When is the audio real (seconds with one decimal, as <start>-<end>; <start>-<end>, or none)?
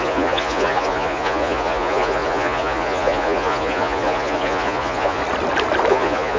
5.2-5.9